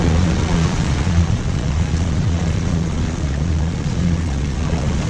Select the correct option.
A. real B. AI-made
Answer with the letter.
B